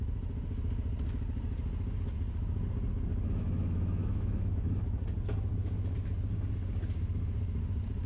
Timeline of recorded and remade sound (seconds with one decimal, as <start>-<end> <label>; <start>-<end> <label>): 0.0-3.1 recorded; 3.1-4.8 remade; 4.8-8.1 recorded